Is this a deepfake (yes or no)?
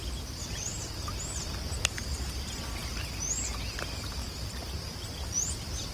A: no